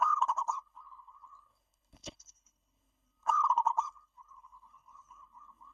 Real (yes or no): no